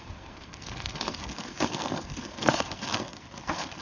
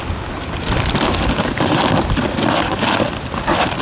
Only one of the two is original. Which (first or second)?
second